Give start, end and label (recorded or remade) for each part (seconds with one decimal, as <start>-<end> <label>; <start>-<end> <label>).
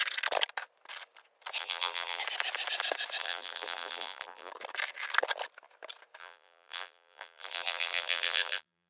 0.0-1.6 recorded; 1.6-2.2 remade; 2.2-3.2 recorded; 3.2-4.5 remade; 4.5-6.2 recorded; 6.2-8.9 remade